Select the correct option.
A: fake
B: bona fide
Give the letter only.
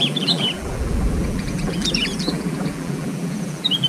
A